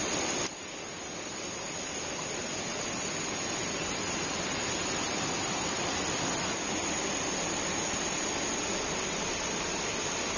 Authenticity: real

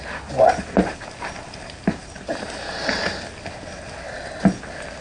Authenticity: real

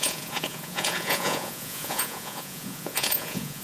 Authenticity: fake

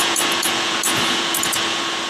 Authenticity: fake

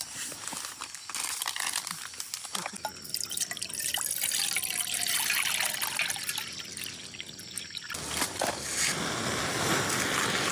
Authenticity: real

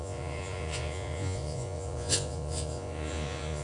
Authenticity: fake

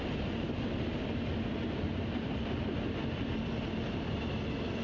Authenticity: real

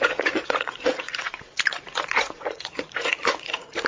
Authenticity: fake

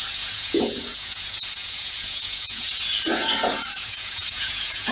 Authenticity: fake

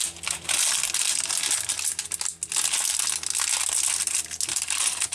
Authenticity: real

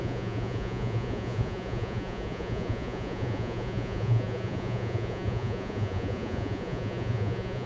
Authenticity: fake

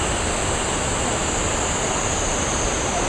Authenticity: real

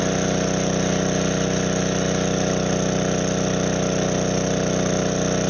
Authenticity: real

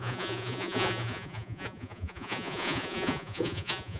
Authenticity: fake